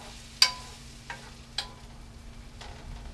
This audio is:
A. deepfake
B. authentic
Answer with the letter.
B